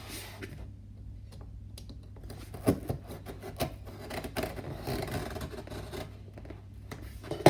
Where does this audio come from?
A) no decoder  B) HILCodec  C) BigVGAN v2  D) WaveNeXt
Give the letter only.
A